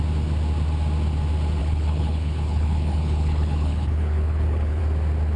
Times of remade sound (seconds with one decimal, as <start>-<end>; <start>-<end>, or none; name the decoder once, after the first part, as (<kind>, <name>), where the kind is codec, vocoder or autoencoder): 1.6-4.8 (codec, HILCodec)